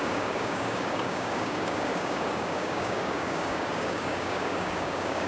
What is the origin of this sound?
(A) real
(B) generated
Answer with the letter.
B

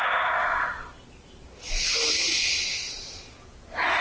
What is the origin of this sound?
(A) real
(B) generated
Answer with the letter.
A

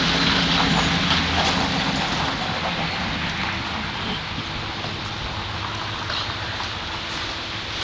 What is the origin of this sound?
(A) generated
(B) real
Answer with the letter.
B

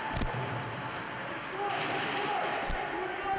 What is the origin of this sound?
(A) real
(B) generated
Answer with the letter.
A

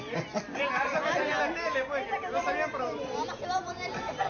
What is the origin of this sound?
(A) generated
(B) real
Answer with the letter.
B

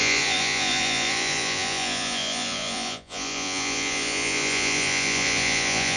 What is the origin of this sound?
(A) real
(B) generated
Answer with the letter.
B